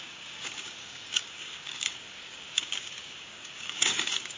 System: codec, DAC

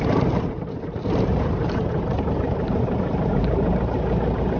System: vocoder, BigVGAN v2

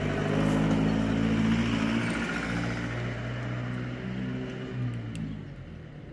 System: none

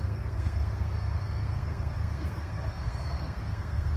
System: codec, SNAC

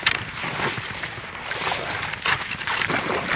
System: none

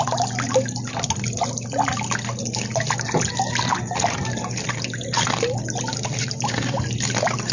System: none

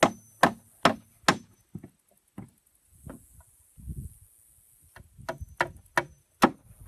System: none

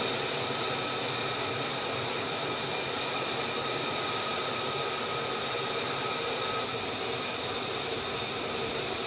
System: none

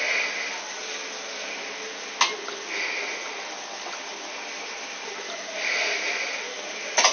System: none